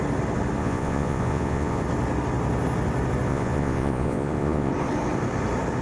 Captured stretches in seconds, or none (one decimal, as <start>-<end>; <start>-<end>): 0.0-0.6; 1.8-3.3; 4.7-5.8